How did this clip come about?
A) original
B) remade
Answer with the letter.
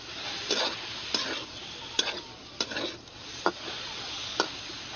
A